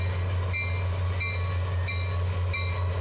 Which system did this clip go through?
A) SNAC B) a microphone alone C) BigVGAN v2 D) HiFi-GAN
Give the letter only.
B